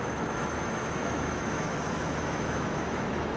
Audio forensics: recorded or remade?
remade